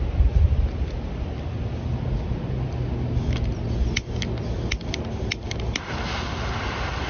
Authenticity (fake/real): real